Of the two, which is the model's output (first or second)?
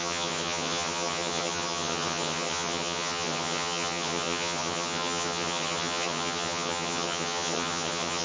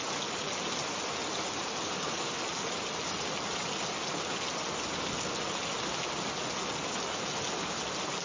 first